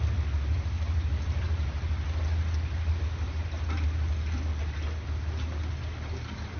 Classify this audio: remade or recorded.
recorded